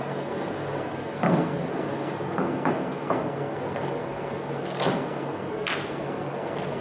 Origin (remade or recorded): remade